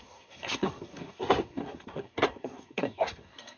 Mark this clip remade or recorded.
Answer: remade